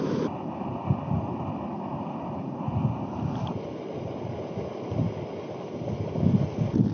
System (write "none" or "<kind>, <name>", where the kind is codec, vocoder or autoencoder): none